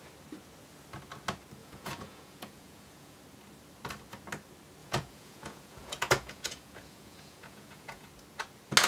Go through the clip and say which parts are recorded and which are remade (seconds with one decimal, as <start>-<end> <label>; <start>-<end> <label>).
0.0-1.6 recorded; 1.6-3.2 remade; 3.2-4.8 recorded; 4.8-8.1 remade; 8.1-8.9 recorded